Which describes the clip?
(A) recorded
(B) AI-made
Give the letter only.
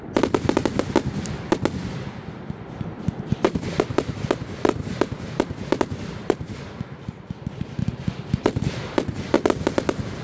A